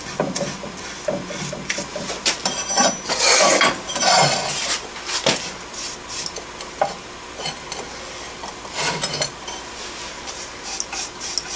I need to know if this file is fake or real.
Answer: real